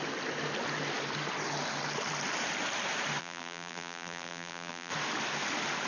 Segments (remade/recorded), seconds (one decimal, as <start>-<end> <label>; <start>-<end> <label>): 0.0-3.2 recorded; 3.2-4.9 remade; 4.9-5.9 recorded